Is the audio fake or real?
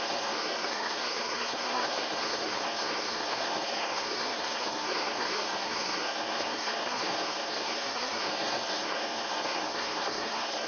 fake